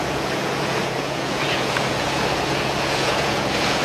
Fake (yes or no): yes